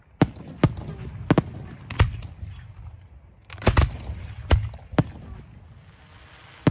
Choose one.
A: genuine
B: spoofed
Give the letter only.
A